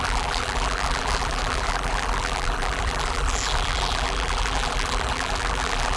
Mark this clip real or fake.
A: fake